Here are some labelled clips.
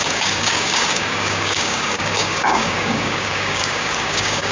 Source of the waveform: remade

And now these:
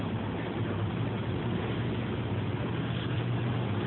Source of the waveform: recorded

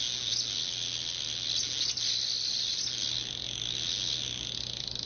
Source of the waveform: recorded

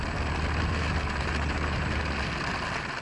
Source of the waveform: recorded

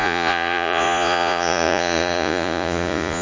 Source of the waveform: remade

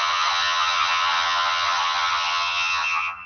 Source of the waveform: remade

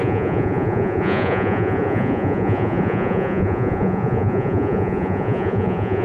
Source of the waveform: remade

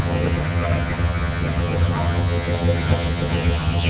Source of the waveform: remade